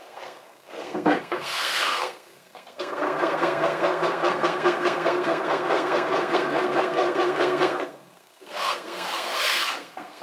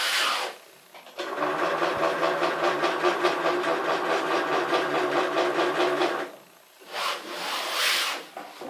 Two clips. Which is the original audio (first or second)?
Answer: second